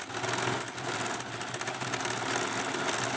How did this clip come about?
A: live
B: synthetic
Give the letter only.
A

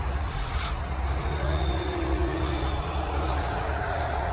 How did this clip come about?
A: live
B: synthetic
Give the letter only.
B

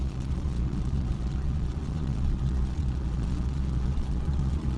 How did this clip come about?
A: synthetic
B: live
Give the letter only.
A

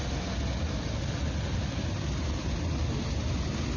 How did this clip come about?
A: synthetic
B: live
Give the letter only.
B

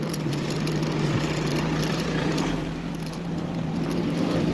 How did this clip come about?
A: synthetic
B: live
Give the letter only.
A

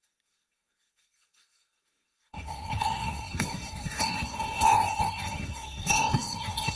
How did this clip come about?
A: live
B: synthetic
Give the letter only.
B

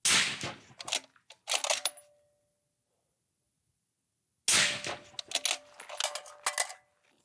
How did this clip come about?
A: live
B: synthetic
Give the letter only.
A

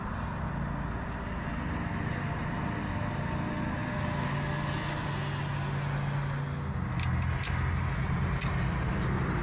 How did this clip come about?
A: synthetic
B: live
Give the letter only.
B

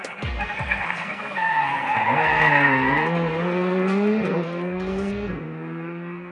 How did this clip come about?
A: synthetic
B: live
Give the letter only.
A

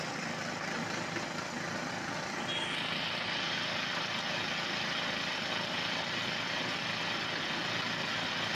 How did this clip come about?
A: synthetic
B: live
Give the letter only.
B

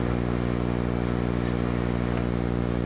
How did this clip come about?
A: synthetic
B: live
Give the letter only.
B